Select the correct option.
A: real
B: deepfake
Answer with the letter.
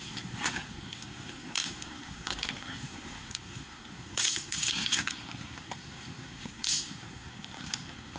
B